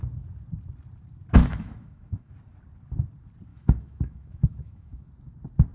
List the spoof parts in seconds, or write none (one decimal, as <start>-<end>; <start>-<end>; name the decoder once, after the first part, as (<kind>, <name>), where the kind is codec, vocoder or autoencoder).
1.4-2.3 (autoencoder, DAC-VAE); 3.5-5.1

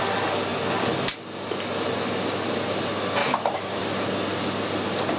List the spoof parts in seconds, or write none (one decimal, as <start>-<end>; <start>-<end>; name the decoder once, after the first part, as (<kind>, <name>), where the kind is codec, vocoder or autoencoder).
3.2-3.8 (autoencoder, DAC-VAE)

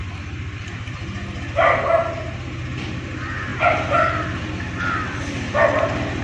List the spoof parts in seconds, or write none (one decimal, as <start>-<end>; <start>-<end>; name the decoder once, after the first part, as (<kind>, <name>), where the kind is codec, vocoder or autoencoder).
none

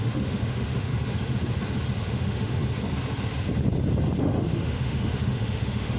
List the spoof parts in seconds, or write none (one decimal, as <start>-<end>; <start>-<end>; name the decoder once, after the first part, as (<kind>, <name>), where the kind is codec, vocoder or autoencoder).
0.0-0.9 (autoencoder, DAC-VAE); 2.0-2.6; 4.2-6.0